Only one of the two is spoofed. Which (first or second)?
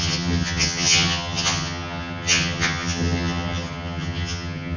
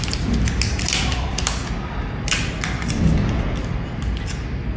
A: first